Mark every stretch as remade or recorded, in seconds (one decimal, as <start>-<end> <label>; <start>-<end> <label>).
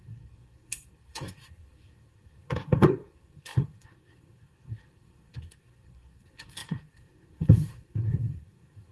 0.0-8.9 remade